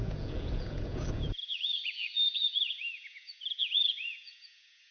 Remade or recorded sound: remade